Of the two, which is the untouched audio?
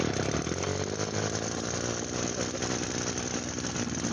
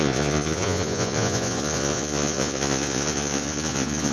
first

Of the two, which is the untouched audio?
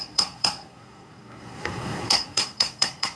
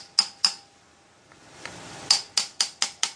second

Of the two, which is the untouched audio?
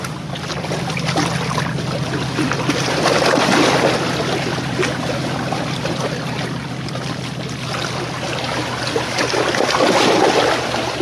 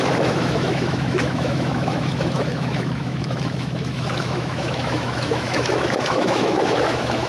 first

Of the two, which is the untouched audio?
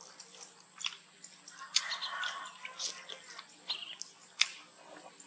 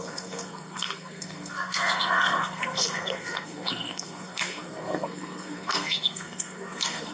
first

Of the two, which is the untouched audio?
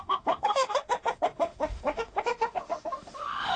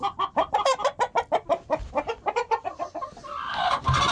second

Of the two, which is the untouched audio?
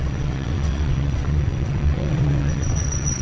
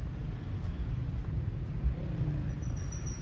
second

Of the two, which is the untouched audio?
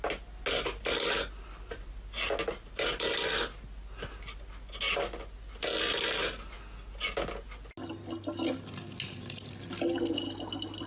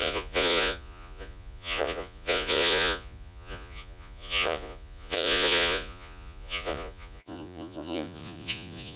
first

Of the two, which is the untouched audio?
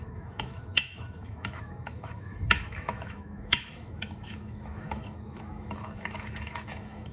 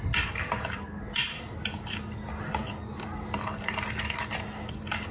second